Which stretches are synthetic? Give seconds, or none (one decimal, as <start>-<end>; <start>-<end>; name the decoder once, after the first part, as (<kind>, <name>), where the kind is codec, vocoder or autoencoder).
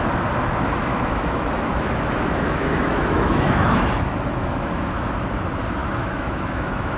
0.9-5.1 (autoencoder, DAC-VAE); 5.8-7.0